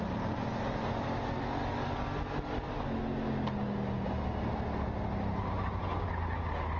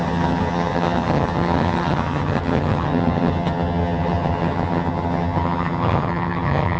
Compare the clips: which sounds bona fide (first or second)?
first